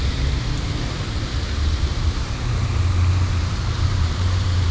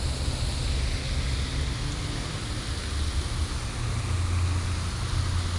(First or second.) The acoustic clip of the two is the second